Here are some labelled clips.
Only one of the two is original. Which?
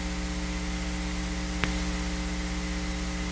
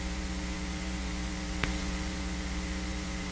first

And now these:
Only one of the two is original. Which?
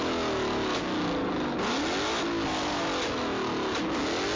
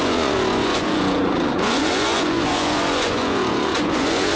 first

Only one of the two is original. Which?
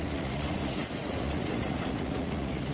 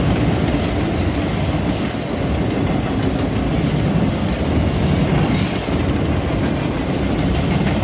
second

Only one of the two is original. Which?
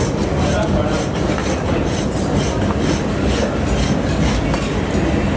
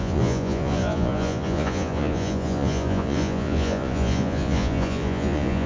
first